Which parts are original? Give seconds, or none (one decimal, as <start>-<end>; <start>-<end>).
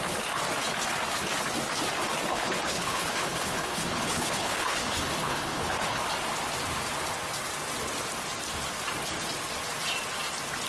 0.0-2.3; 6.0-10.7